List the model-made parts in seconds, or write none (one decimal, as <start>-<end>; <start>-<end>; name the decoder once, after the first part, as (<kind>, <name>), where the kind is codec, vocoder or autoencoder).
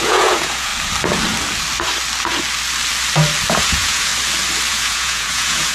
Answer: 0.0-0.7 (vocoder, Vocos); 3.5-4.1; 4.7-5.7